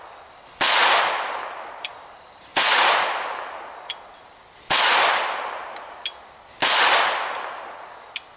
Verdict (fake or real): real